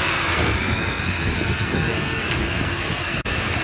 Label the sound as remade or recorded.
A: remade